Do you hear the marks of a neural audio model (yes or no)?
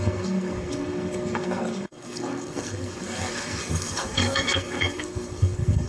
yes